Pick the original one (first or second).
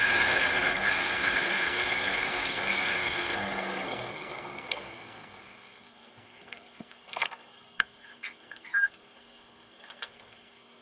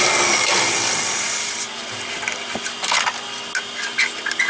second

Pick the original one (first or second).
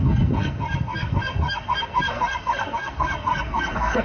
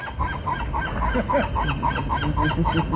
second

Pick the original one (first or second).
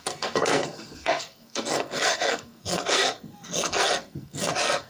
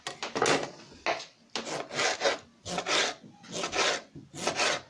second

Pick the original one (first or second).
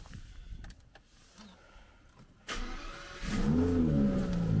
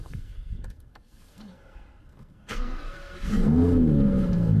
first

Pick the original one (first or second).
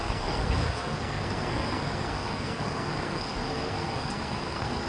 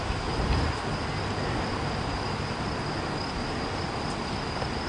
second